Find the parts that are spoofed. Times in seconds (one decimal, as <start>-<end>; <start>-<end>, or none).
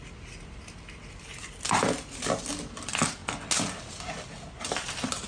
none